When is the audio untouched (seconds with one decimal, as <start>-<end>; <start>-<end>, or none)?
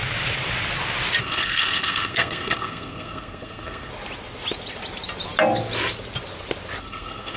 0.0-1.2; 3.9-6.8